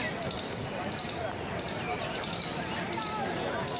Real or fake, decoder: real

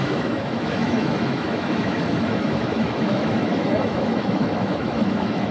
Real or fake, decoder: fake, autoencoder, DAC-VAE